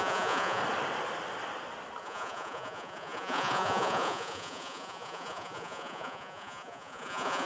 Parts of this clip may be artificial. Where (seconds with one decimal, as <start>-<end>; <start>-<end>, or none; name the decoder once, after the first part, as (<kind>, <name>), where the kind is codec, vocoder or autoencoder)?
0.0-0.6 (vocoder, Vocos); 2.0-7.5